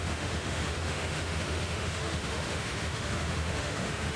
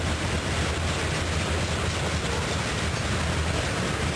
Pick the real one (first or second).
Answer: second